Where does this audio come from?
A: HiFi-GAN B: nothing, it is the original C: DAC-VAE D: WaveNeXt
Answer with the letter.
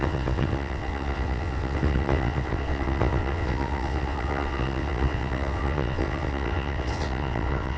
D